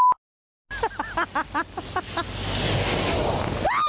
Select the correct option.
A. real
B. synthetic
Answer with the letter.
A